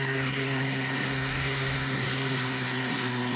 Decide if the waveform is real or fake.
fake